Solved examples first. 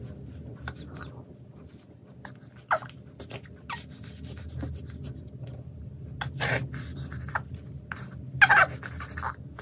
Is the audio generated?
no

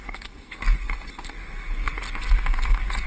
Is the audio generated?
yes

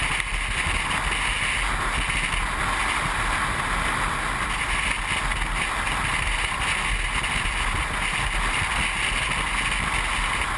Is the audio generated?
no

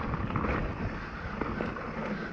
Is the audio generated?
no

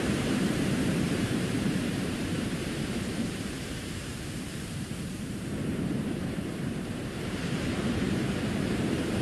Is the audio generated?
yes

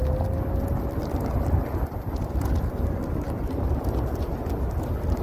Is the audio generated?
no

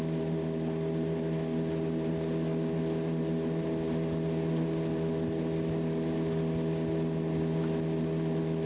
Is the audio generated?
no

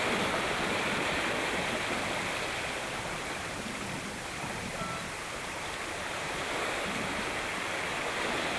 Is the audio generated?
no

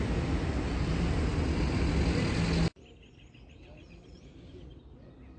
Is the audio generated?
no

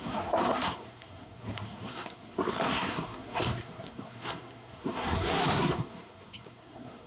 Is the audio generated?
yes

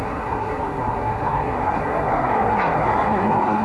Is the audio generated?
yes